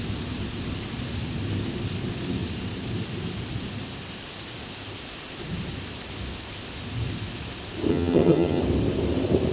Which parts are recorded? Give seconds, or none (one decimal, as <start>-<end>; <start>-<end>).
0.0-7.9; 8.6-9.5